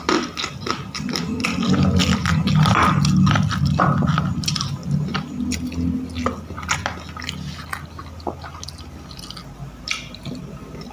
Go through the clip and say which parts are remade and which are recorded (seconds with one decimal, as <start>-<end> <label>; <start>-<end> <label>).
0.0-10.9 recorded